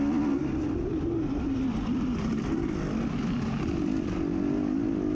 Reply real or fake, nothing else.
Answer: real